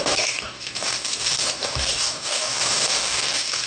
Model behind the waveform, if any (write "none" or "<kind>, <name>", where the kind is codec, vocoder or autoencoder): codec, DAC